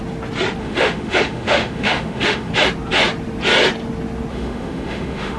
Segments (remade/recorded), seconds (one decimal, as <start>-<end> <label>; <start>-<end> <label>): 0.0-0.6 recorded; 0.6-2.5 remade; 2.5-4.3 recorded; 4.3-5.4 remade